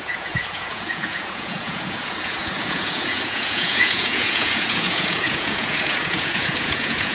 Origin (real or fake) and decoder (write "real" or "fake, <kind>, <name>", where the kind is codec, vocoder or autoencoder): fake, vocoder, Vocos